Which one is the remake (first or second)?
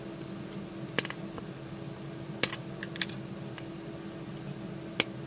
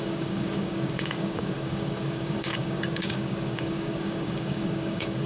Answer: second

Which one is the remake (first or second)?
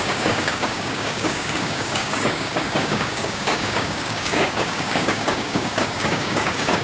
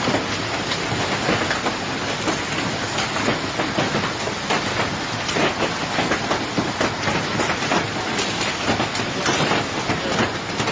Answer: first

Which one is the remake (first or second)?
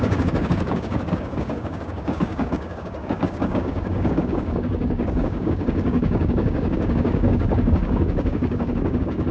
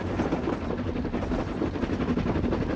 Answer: first